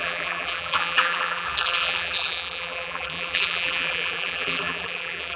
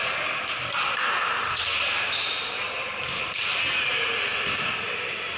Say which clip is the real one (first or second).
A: second